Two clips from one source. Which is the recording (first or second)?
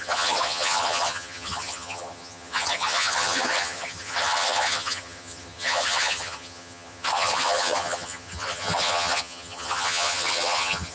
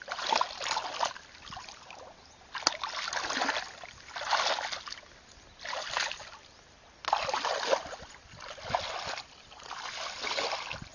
second